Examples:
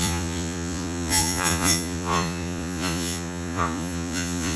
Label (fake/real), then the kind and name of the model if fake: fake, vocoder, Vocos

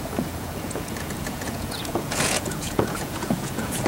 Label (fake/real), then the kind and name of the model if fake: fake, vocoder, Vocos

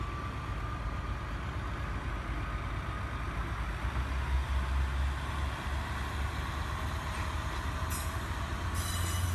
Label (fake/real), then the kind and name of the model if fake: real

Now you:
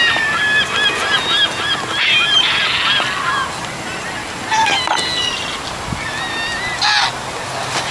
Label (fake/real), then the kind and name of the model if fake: real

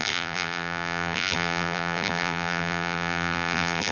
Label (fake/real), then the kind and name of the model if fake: fake, vocoder, BigVGAN v2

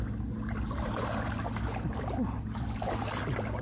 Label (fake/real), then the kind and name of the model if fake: real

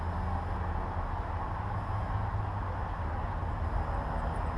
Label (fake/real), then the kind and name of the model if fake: real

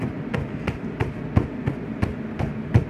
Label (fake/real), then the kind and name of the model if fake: real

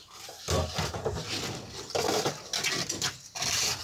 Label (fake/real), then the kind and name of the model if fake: real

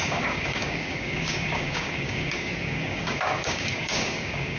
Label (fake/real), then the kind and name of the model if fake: fake, codec, DAC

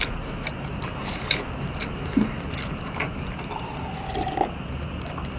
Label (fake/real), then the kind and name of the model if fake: fake, vocoder, BigVGAN v2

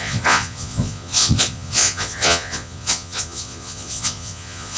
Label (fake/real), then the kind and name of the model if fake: fake, vocoder, Vocos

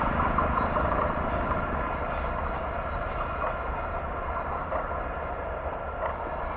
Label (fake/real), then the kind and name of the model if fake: real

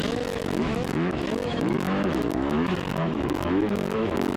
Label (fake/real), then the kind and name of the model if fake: fake, autoencoder, DAC-VAE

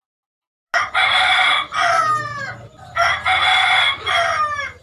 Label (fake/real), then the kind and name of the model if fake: real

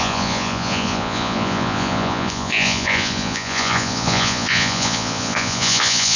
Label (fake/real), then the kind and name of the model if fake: fake, vocoder, Vocos